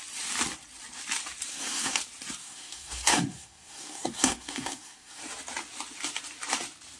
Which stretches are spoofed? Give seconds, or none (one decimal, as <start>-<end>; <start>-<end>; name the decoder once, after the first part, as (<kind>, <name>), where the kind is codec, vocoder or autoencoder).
1.5-2.0 (codec, SNAC); 2.4-5.2